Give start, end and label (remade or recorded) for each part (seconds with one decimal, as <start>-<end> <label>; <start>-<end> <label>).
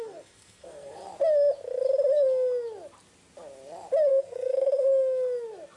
0.0-1.0 remade; 1.0-4.1 recorded; 4.1-4.9 remade; 4.9-5.8 recorded